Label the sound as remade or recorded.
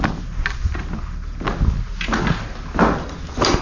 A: recorded